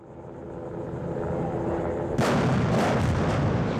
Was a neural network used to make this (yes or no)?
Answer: no